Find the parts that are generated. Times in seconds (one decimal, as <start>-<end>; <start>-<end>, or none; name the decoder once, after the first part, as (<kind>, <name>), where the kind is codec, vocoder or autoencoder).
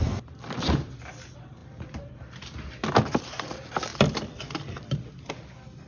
3.9-5.3 (vocoder, BigVGAN v2)